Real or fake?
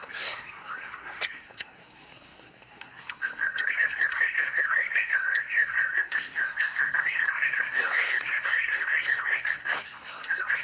fake